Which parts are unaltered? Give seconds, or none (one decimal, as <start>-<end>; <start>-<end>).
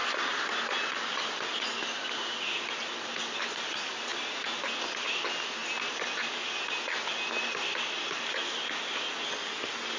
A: 2.4-4.1; 4.7-10.0